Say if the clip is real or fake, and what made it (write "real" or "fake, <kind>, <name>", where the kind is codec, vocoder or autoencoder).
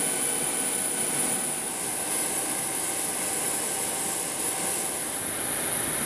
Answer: real